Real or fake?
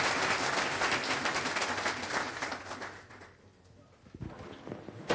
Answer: real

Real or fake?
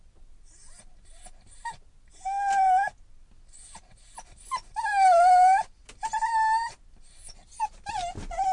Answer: real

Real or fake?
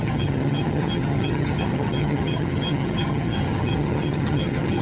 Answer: fake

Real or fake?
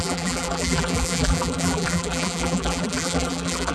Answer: fake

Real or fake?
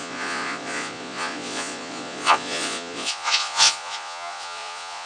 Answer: fake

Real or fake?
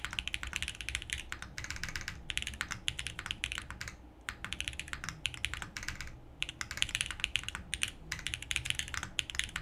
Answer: real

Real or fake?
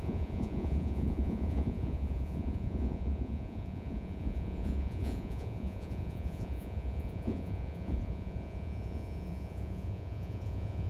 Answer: fake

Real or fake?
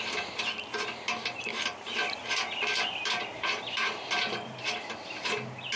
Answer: real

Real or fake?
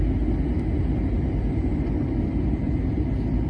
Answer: real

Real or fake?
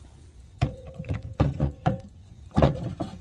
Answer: fake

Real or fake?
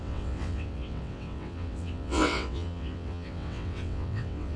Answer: fake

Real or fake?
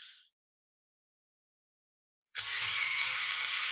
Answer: fake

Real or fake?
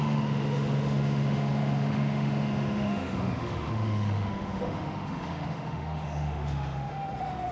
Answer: fake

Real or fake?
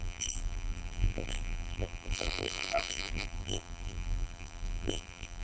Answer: fake